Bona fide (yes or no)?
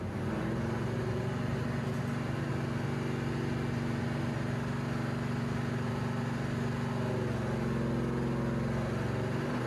yes